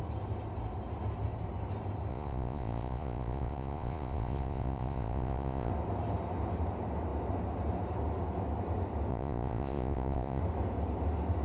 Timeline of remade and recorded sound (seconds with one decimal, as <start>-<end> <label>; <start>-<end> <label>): 0.0-2.1 recorded; 2.1-5.7 remade; 5.7-9.1 recorded; 9.1-10.4 remade; 10.4-11.4 recorded